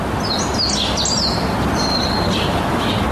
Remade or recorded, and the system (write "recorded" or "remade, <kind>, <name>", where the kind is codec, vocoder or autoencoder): recorded